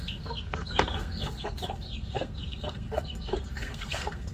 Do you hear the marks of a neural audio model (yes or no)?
yes